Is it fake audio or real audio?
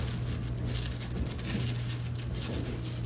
real